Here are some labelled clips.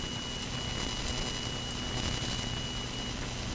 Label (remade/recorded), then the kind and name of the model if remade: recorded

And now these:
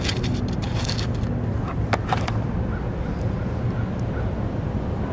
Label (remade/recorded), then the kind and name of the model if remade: recorded